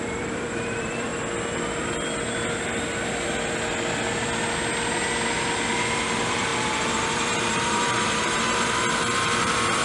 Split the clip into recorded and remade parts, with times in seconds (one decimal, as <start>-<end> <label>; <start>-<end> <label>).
0.0-1.1 remade; 1.1-6.0 recorded; 6.0-9.8 remade